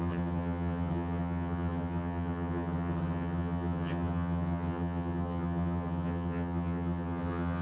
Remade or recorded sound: remade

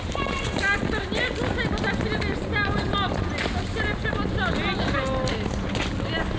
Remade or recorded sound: recorded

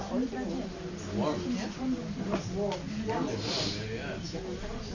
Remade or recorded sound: recorded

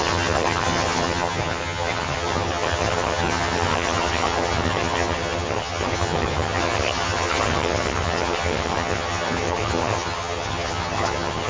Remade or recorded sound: remade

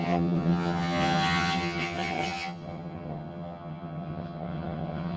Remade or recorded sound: remade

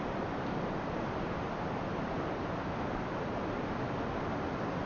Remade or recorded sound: recorded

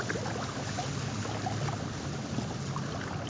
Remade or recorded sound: recorded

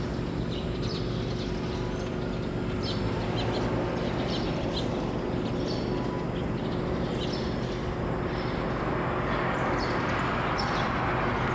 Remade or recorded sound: recorded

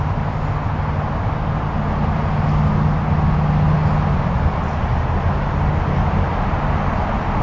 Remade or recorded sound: recorded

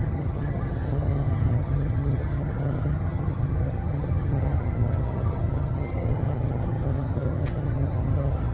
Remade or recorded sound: remade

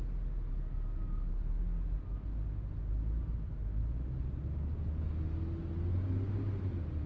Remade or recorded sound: recorded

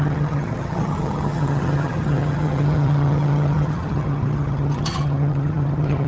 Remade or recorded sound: remade